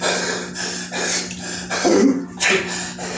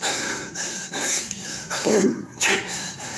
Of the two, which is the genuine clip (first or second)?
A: first